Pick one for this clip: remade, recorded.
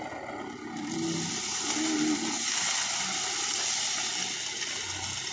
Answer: recorded